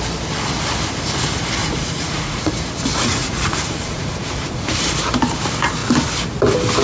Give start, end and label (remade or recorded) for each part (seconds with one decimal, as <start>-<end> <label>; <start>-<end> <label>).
0.0-1.6 recorded; 1.6-2.5 remade; 2.5-2.9 recorded; 2.9-4.7 remade; 4.7-6.8 recorded